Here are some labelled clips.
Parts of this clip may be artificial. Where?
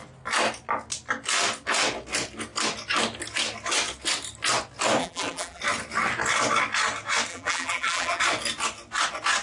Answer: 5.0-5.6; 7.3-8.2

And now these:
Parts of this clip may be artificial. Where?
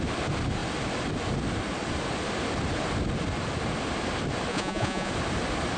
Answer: 4.5-5.1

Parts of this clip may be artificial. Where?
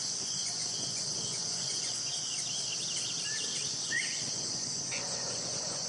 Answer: 0.0-2.3; 3.7-5.9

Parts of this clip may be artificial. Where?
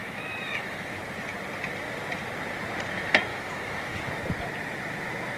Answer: 0.0-1.0; 3.3-4.1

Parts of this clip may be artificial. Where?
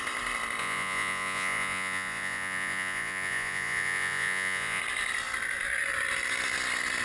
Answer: 0.6-4.8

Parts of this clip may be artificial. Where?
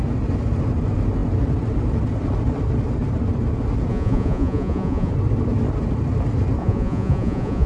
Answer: 3.9-5.1; 6.6-7.7